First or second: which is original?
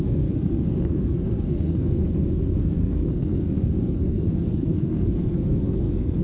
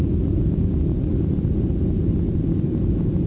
second